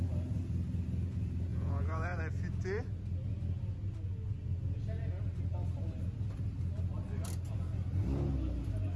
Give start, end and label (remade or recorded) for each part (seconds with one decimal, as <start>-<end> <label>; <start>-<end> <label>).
0.0-1.5 recorded; 1.5-2.2 remade; 2.2-9.0 recorded